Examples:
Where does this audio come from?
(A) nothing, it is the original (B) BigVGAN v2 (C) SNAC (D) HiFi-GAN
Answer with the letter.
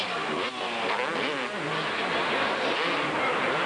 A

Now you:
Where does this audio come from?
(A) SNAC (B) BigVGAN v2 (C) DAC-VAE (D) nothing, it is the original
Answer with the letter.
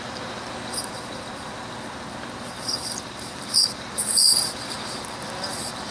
D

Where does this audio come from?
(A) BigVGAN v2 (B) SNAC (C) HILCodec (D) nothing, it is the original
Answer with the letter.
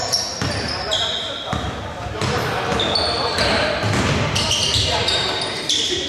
A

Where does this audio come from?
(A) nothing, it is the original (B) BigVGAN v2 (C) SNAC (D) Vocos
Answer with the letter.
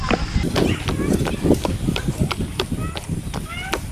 A